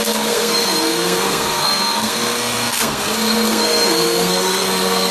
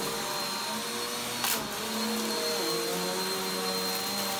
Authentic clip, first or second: second